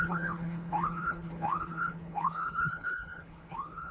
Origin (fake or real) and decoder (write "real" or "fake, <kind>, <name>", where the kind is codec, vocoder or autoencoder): fake, codec, HILCodec